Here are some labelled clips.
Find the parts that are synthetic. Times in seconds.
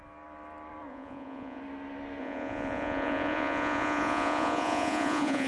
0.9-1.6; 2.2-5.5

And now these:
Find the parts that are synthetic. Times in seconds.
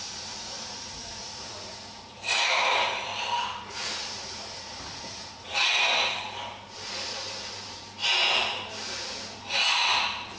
0.0-3.1; 3.6-5.5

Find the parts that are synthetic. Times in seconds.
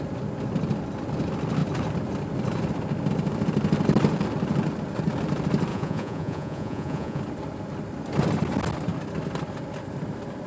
5.7-7.2